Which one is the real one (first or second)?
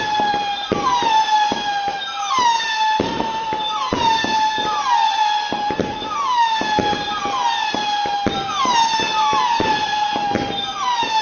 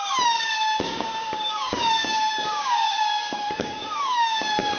first